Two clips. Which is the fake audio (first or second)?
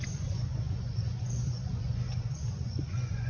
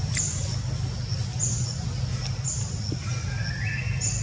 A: first